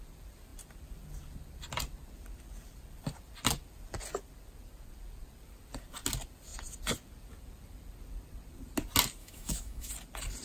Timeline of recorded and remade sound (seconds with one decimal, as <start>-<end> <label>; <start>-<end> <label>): 0.0-9.2 recorded; 9.2-9.9 remade; 9.9-10.4 recorded